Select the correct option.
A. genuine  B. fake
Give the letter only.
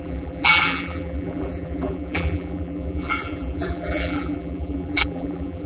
B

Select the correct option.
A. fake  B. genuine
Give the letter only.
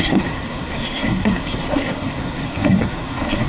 A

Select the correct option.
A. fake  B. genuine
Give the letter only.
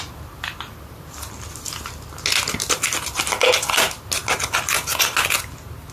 B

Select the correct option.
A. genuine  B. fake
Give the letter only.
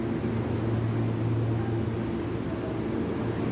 A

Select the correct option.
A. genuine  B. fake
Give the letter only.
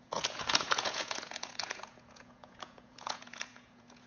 B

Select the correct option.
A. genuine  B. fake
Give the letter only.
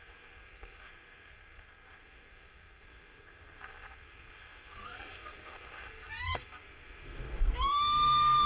B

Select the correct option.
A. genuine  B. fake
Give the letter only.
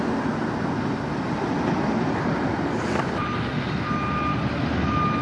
A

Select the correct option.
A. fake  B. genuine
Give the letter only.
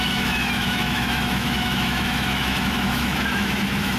A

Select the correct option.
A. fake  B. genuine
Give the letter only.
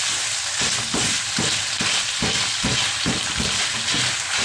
B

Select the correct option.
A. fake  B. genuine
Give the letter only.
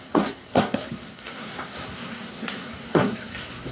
A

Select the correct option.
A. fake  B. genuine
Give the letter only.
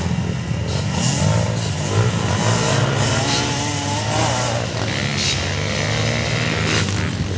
B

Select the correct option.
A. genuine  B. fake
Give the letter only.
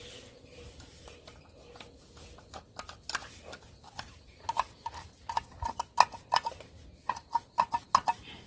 A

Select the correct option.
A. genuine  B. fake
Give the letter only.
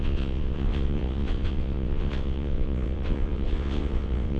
B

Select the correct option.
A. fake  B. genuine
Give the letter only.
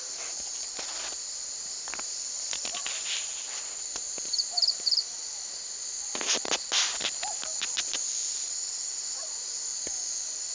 B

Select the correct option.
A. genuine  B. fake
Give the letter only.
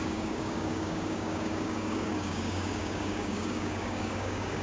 B